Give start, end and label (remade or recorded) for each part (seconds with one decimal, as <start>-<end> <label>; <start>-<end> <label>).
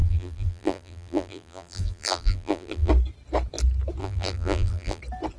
0.0-2.9 remade; 2.9-4.0 recorded; 4.0-5.0 remade; 5.0-5.4 recorded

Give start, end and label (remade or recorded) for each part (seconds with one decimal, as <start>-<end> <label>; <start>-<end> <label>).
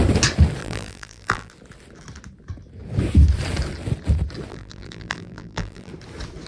0.0-0.6 recorded; 0.6-1.5 remade; 1.5-4.5 recorded; 4.5-5.9 remade; 5.9-6.5 recorded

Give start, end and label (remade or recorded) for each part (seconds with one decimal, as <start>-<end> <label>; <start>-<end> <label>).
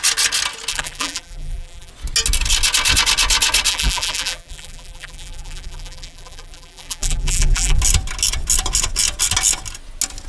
0.0-0.7 recorded; 0.7-1.9 remade; 1.9-3.7 recorded; 3.7-7.8 remade; 7.8-10.3 recorded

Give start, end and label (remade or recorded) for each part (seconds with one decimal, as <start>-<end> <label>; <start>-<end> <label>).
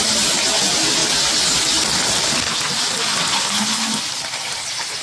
0.0-1.0 remade; 1.0-4.0 recorded; 4.0-5.0 remade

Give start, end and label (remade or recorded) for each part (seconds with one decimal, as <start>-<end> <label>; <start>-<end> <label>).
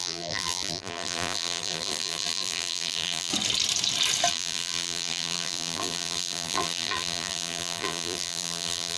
0.0-3.3 remade; 3.3-4.3 recorded; 4.3-9.0 remade